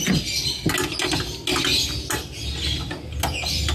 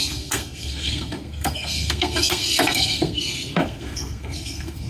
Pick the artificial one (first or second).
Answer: second